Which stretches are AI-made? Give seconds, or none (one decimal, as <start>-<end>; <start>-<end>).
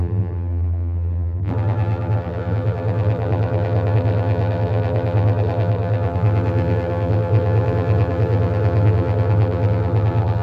0.0-10.4